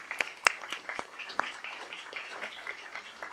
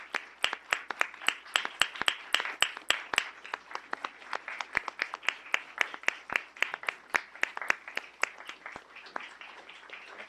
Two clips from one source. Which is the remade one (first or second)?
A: first